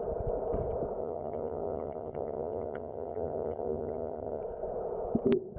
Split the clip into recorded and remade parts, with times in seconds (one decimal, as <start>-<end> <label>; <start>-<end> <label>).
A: 0.0-1.0 recorded; 1.0-4.4 remade; 4.4-5.6 recorded